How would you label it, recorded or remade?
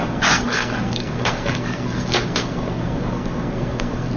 remade